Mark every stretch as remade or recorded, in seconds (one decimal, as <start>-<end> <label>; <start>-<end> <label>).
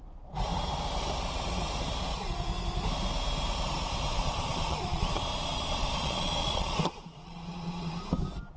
0.0-4.1 recorded; 4.1-7.9 remade; 7.9-8.6 recorded